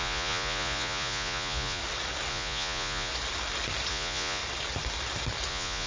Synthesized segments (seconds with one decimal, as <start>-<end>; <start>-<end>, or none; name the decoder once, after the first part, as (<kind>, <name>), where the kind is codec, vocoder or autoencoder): 0.0-1.8 (vocoder, Vocos); 2.3-3.1; 3.9-4.4; 5.5-5.9